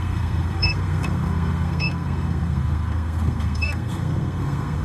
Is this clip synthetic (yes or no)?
yes